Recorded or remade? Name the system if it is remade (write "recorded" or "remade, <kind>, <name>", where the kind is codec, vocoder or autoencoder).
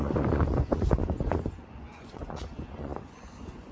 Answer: remade, vocoder, Vocos